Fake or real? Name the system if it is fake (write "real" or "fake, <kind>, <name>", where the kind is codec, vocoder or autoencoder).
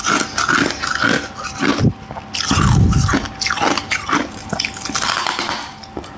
real